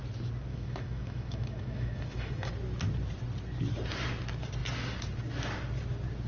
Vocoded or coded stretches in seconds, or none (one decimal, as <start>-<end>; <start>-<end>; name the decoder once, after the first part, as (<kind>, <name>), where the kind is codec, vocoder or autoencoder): 0.5-2.5 (autoencoder, DAC-VAE)